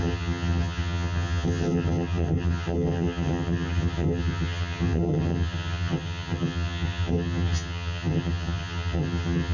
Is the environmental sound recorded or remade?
remade